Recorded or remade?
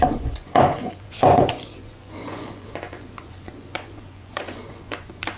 remade